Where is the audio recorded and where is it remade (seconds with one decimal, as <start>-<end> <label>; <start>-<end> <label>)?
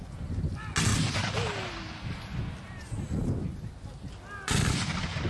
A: 0.0-5.3 recorded